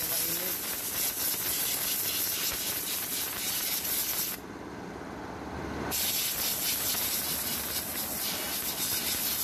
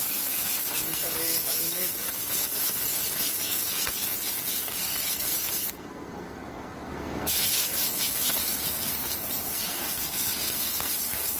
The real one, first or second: first